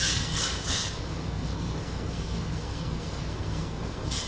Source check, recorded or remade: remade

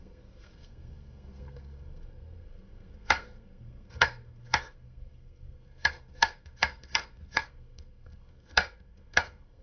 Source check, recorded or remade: remade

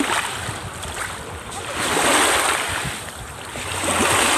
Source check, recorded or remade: recorded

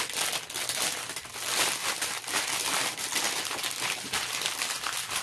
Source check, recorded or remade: recorded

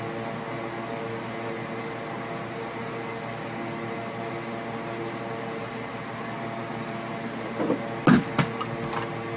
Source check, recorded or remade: recorded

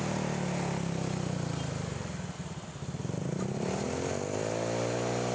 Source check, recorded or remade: recorded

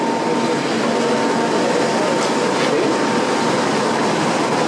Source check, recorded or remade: recorded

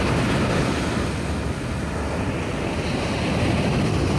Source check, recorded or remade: recorded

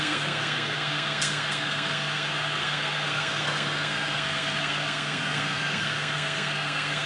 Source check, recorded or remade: remade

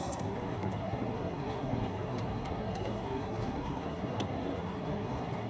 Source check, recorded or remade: remade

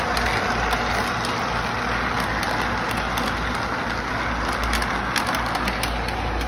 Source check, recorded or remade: recorded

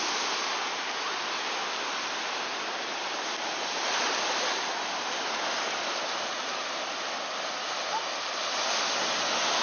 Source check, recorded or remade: recorded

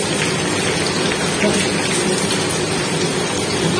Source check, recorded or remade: recorded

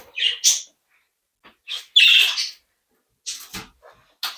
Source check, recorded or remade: recorded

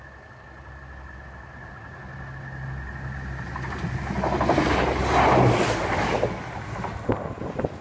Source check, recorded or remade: recorded